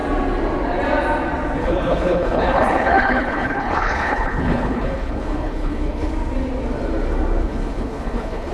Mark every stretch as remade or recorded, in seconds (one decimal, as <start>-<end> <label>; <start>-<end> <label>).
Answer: 0.0-1.6 recorded; 1.6-6.1 remade; 6.1-7.4 recorded; 7.4-8.5 remade